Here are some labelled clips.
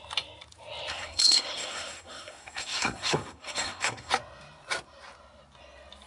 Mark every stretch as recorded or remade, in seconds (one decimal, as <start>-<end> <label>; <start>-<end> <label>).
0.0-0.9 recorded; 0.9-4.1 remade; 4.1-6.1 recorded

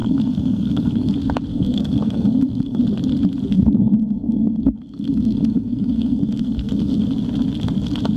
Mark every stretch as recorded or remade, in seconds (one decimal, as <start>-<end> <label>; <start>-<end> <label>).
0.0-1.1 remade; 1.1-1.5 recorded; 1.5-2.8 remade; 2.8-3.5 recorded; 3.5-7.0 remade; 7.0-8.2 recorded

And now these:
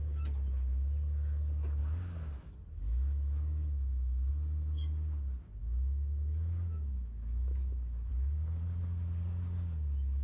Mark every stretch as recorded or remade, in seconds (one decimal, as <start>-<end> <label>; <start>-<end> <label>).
0.0-1.8 recorded; 1.8-4.3 remade; 4.3-5.6 recorded; 5.6-8.1 remade; 8.1-10.2 recorded

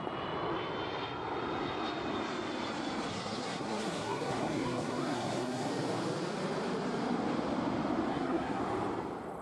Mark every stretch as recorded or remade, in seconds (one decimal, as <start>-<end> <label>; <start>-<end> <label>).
0.0-3.1 recorded; 3.1-5.7 remade; 5.7-8.1 recorded; 8.1-8.6 remade; 8.6-9.4 recorded

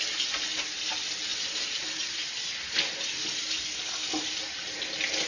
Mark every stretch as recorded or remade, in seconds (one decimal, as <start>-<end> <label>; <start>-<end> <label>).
0.0-5.3 recorded

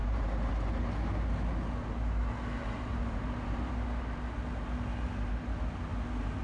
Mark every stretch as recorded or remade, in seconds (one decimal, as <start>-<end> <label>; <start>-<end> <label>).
0.0-0.8 remade; 0.8-2.9 recorded; 2.9-3.7 remade; 3.7-6.4 recorded

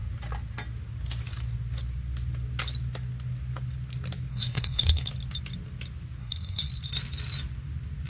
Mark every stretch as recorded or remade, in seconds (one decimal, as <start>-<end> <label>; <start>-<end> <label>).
0.0-4.3 recorded; 4.3-5.1 remade; 5.1-6.2 recorded; 6.2-6.7 remade; 6.7-8.1 recorded

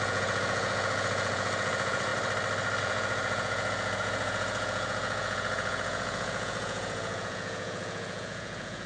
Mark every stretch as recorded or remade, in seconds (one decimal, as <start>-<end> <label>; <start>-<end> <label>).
0.0-2.1 remade; 2.1-2.8 recorded; 2.8-8.9 remade